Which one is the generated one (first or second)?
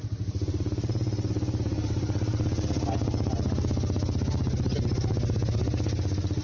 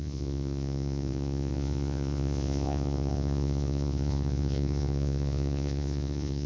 second